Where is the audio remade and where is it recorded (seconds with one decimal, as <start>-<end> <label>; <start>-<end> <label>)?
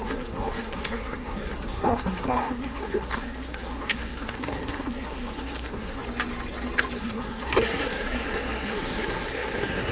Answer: 0.0-6.0 remade; 6.0-7.0 recorded; 7.0-9.9 remade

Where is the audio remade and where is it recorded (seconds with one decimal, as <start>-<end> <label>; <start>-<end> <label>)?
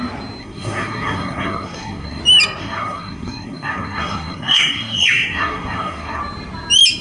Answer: 0.0-0.4 recorded; 0.4-2.2 remade; 2.2-2.6 recorded; 2.6-6.2 remade; 6.2-7.0 recorded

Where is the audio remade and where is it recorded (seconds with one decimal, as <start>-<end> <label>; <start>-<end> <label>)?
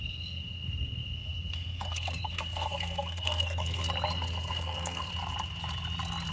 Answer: 0.0-3.8 remade; 3.8-4.4 recorded; 4.4-5.1 remade; 5.1-6.3 recorded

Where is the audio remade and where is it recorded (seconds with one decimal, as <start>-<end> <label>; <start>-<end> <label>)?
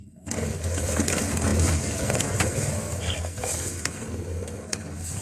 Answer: 0.0-5.2 remade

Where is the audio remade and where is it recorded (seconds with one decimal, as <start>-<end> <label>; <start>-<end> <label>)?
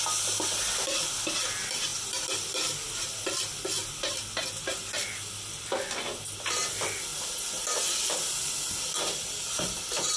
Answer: 0.0-10.2 recorded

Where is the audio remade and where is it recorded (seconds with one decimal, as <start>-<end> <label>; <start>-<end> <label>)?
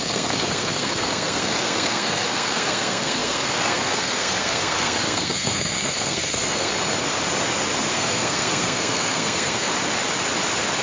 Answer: 0.0-6.7 remade; 6.7-7.9 recorded; 7.9-9.7 remade; 9.7-10.8 recorded